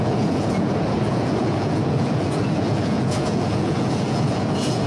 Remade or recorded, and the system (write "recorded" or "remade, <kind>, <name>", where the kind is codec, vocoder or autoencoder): remade, vocoder, Vocos